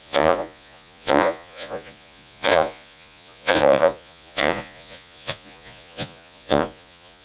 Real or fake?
fake